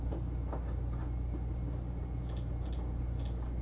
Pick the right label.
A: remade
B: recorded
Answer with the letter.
B